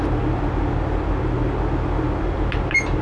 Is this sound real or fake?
real